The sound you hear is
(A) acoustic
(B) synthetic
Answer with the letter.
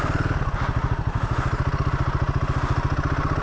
A